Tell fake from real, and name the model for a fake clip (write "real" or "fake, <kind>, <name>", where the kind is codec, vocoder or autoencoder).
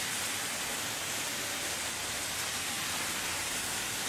real